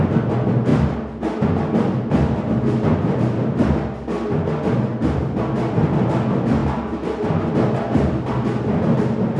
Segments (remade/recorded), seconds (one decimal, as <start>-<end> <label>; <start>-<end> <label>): 0.0-6.6 recorded; 6.6-7.5 remade; 7.5-9.4 recorded